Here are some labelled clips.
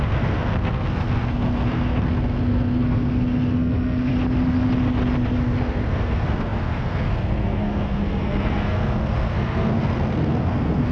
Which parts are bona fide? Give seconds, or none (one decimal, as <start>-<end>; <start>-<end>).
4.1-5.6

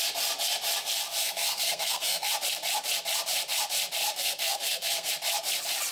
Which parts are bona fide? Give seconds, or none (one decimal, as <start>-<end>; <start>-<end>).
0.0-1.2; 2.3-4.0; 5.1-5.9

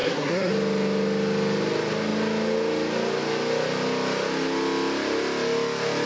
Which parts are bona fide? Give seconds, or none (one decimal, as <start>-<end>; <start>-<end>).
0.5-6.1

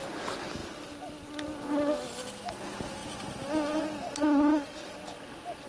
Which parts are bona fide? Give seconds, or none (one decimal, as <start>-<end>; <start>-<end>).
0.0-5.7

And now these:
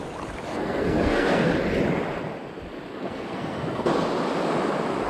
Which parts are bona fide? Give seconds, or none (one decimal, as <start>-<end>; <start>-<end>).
0.0-0.5; 1.5-2.9; 3.9-5.1